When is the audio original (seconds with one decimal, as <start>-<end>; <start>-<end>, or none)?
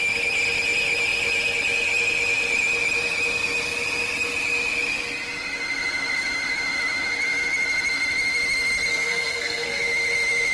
0.0-8.9; 9.8-10.5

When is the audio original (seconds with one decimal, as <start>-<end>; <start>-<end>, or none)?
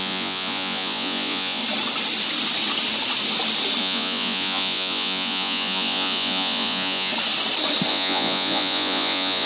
1.6-3.8; 7.1-7.9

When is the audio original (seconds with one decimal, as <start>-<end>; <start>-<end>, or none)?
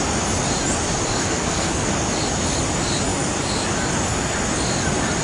0.0-1.2; 1.9-5.2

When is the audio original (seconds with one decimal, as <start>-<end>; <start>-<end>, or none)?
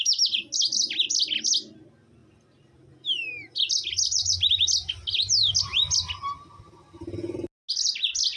0.0-8.4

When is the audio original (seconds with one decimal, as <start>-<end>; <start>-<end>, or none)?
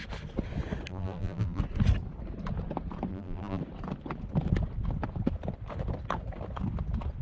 0.0-0.9; 1.6-3.1; 3.6-7.2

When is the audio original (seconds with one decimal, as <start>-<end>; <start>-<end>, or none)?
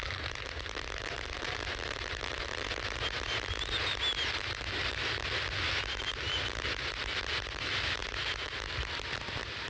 0.0-9.7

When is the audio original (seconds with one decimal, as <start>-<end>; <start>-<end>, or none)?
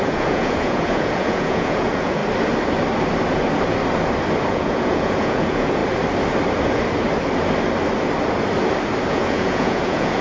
2.2-4.5; 5.8-9.1